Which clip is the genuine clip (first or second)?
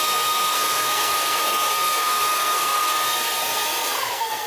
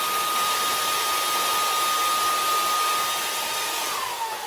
second